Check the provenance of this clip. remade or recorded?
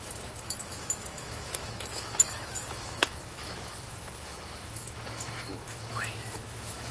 remade